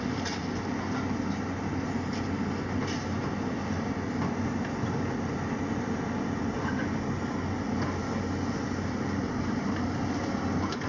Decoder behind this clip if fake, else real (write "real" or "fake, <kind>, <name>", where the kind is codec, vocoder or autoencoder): real